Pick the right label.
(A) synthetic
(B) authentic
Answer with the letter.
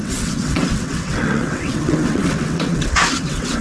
A